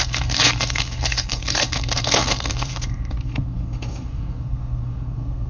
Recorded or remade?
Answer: remade